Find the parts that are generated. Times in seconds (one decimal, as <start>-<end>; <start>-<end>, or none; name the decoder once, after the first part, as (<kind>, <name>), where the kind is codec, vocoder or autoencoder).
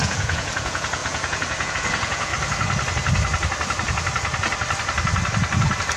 0.0-2.3 (vocoder, Vocos)